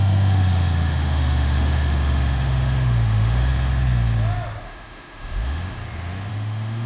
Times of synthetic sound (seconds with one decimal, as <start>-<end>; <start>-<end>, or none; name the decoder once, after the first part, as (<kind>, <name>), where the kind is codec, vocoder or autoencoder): 0.0-3.5 (autoencoder, DAC-VAE); 4.6-5.8; 6.3-6.9